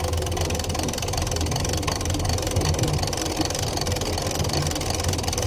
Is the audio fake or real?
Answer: real